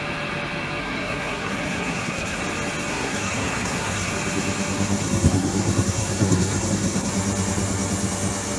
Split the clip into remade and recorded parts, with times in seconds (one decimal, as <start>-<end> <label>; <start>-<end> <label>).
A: 0.0-0.8 recorded; 0.8-2.4 remade; 2.4-2.9 recorded; 2.9-4.1 remade; 4.1-5.0 recorded; 5.0-7.1 remade; 7.1-8.6 recorded